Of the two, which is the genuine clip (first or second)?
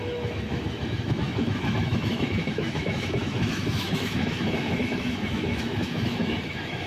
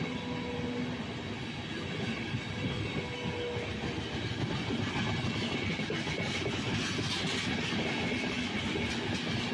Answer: second